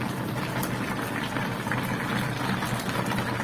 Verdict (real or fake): real